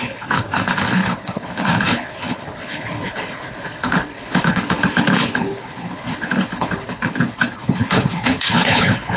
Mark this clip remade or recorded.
remade